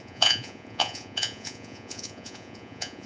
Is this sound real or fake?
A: fake